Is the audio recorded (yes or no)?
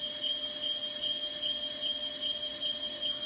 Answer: yes